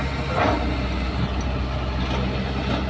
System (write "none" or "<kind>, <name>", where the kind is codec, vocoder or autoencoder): none